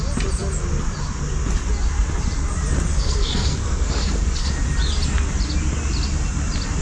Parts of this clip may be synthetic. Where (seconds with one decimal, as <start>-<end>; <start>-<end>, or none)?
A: 2.9-4.5